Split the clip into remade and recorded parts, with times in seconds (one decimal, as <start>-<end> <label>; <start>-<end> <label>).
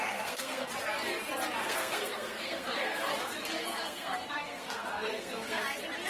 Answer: 0.0-0.7 remade; 0.7-1.6 recorded; 1.6-3.1 remade; 3.1-3.6 recorded; 3.6-5.6 remade; 5.6-6.1 recorded